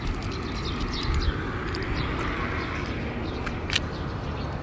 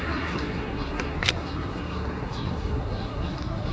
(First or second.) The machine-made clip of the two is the second